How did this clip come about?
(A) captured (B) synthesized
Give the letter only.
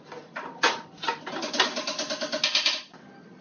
A